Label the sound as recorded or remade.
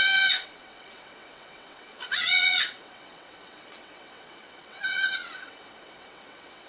remade